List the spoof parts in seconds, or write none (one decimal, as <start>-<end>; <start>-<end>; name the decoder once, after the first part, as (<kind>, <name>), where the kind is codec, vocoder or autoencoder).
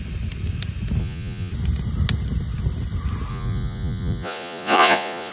1.0-1.5 (vocoder, Vocos); 3.3-5.3